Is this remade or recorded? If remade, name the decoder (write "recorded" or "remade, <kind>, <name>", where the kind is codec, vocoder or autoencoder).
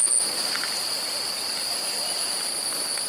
recorded